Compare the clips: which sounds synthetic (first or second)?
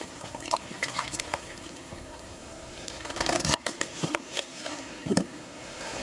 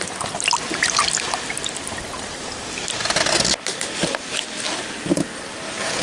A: first